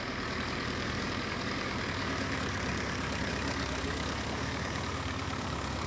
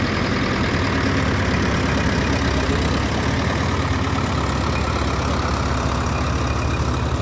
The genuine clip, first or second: second